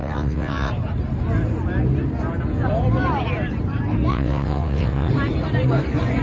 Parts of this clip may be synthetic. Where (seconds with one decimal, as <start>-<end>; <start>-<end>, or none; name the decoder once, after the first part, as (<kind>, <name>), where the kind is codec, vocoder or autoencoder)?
0.0-0.7 (vocoder, WaveNeXt); 4.1-5.1